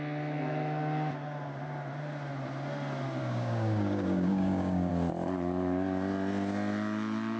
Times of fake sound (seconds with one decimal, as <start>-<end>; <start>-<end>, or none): 3.2-4.9

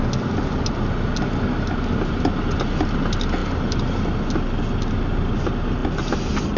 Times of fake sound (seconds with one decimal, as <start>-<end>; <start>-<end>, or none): none

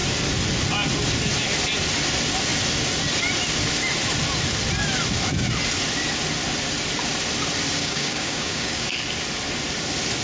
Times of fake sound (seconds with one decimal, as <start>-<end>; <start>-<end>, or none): 7.8-8.9

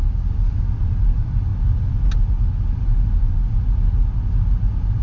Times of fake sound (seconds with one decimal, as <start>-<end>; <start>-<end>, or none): none